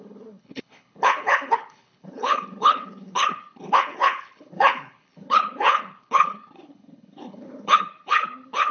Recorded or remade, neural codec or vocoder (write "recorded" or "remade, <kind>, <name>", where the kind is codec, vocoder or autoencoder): remade, codec, HILCodec